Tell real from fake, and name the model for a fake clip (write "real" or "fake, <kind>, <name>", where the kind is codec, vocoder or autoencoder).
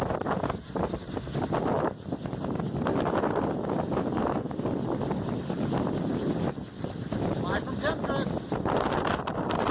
real